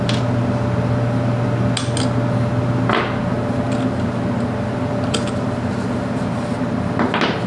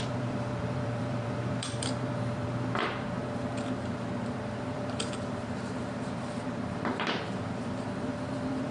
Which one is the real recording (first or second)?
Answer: first